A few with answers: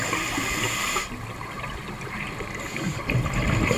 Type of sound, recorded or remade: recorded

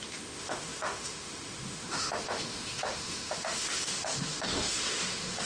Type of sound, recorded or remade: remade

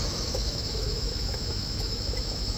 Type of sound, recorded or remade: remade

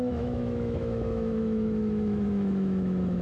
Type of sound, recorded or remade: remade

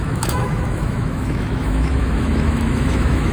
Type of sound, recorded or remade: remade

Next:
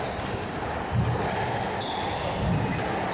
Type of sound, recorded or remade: recorded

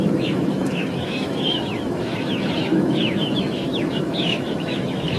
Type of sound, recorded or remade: remade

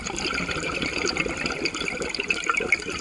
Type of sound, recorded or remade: recorded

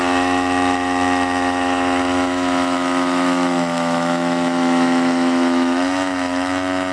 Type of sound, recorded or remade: remade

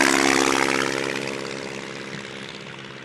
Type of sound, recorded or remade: recorded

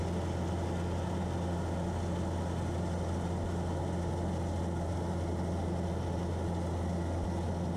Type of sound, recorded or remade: recorded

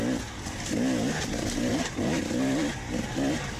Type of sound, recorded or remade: recorded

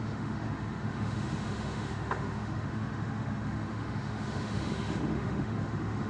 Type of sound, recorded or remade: remade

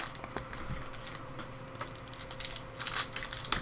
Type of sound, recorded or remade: recorded